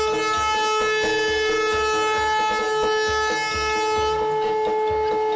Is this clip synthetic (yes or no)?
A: no